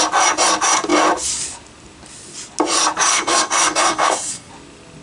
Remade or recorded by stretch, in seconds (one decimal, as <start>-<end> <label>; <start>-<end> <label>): 0.0-3.1 recorded; 3.1-4.5 remade; 4.5-5.0 recorded